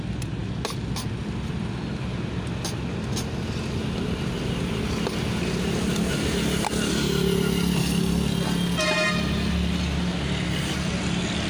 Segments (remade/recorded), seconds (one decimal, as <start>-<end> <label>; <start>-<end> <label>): 0.0-11.5 recorded